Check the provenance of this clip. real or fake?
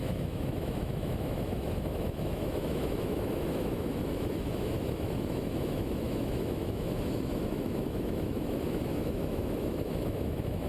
fake